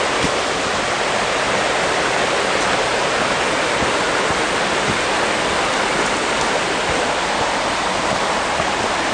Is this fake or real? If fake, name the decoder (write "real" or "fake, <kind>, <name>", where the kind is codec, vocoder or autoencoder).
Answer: real